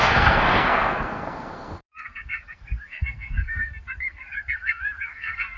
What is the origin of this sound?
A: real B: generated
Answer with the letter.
B